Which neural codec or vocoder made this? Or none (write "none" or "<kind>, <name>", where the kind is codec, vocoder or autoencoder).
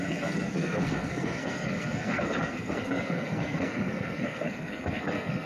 codec, SNAC